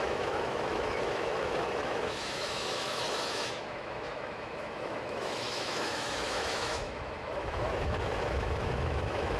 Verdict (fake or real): fake